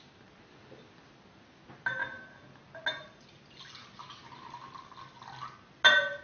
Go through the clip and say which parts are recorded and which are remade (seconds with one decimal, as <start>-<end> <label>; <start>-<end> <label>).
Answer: 0.0-6.2 recorded